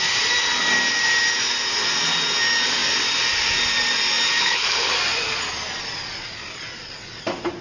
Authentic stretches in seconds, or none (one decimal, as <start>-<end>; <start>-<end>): 0.0-4.4; 4.9-7.6